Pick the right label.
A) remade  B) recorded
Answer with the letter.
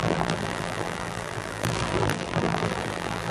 A